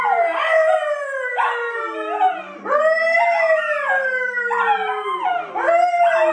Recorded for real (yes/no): yes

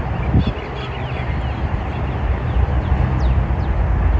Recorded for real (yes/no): yes